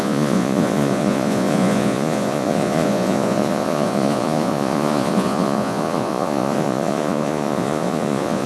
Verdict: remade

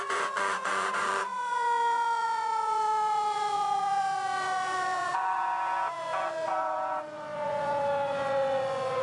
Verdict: remade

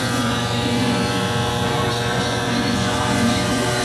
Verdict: remade